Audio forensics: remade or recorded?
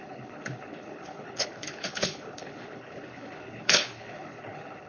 remade